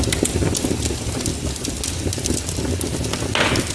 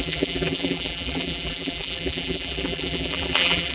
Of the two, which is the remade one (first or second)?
second